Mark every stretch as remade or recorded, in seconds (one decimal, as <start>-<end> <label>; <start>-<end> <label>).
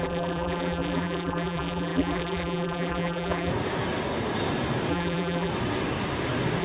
0.0-3.5 remade; 3.5-4.9 recorded; 4.9-5.5 remade; 5.5-6.6 recorded